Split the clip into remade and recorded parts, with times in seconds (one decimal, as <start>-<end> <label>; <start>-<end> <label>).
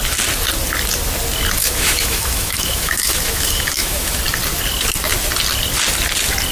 0.0-1.6 recorded; 1.6-4.2 remade; 4.2-6.5 recorded